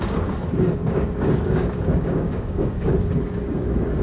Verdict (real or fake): fake